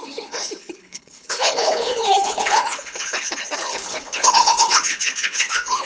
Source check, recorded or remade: remade